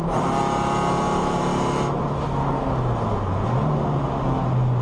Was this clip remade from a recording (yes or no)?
no